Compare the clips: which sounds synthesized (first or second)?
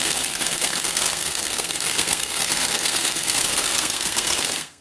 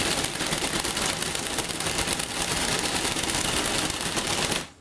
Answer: first